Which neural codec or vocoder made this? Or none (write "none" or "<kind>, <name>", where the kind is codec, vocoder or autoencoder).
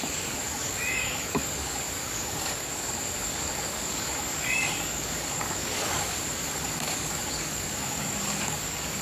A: codec, DAC